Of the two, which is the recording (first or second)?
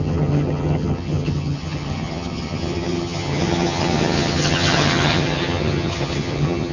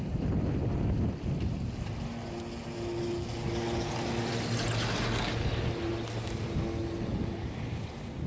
second